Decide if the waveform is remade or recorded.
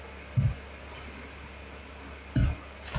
recorded